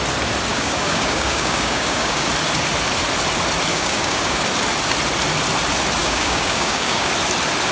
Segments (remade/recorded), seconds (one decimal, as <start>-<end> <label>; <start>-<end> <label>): 0.0-0.5 recorded; 0.5-2.3 remade; 2.3-3.7 recorded; 3.7-4.4 remade; 4.4-6.0 recorded; 6.0-7.1 remade; 7.1-7.7 recorded